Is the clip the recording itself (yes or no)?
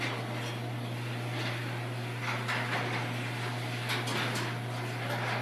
yes